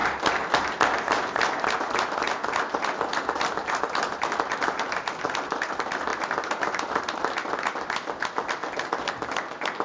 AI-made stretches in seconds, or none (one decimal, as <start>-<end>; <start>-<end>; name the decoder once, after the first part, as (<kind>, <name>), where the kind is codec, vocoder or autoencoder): none